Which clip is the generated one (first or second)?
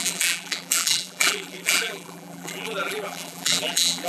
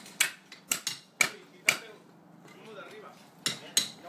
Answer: first